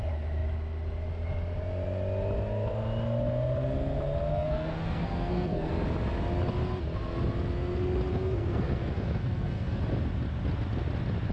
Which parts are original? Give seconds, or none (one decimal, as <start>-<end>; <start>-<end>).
0.0-4.3; 5.7-8.1; 9.8-11.3